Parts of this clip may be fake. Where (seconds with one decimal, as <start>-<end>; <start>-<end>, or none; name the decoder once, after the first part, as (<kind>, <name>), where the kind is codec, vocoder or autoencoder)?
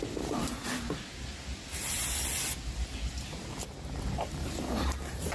0.0-0.6 (vocoder, BigVGAN v2); 3.8-5.3